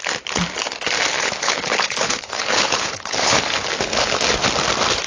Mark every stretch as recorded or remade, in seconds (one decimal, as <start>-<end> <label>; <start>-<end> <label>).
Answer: 0.0-1.1 recorded; 1.1-4.2 remade; 4.2-5.1 recorded